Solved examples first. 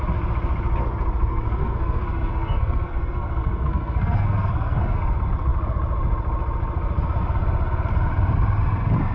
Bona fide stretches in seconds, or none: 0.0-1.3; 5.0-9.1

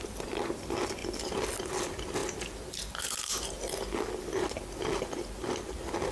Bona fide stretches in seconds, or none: 0.0-6.1